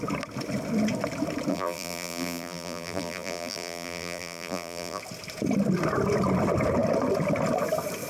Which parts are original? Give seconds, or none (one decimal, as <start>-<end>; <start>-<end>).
0.0-1.5; 5.0-8.1